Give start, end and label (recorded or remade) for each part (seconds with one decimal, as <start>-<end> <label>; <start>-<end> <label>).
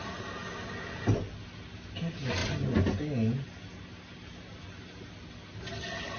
0.0-6.2 recorded